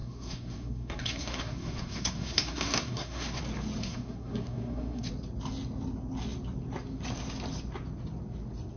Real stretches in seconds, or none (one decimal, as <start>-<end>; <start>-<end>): 3.4-3.8; 5.1-8.8